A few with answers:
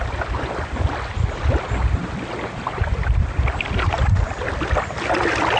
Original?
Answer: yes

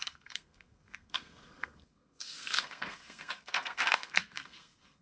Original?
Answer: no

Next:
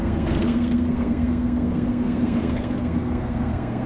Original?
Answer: no